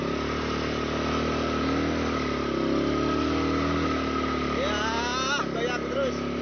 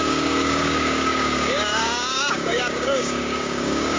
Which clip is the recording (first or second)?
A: first